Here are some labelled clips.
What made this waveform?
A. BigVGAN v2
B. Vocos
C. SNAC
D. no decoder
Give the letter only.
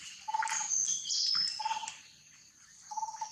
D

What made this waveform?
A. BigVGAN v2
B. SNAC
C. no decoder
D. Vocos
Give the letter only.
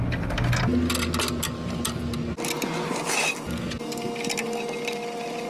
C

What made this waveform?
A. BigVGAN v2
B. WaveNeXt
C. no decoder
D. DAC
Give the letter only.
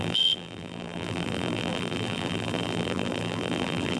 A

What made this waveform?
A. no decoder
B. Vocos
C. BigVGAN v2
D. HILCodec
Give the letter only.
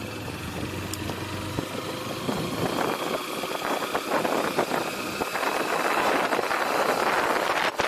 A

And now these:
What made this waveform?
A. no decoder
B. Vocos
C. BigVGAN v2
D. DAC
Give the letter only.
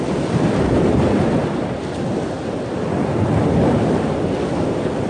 A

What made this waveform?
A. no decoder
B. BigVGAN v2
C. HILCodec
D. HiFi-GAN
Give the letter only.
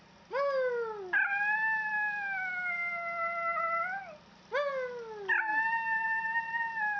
A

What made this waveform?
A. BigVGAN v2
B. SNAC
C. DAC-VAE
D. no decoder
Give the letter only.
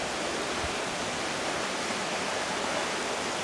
D